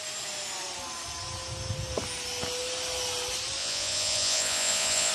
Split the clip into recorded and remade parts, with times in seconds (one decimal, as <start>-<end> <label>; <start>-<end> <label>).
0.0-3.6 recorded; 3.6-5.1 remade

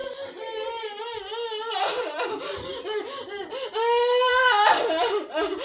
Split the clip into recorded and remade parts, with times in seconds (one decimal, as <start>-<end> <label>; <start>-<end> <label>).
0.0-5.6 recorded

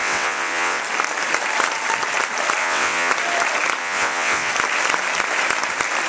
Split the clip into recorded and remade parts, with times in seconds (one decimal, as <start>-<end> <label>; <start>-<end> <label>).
0.0-0.8 remade; 0.8-2.6 recorded; 2.6-3.1 remade; 3.1-3.8 recorded; 3.8-4.5 remade; 4.5-6.1 recorded